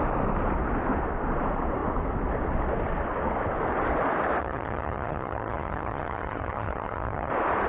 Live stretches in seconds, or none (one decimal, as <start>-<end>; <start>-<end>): 0.0-4.4; 7.3-7.7